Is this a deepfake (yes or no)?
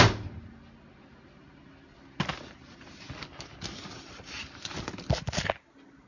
no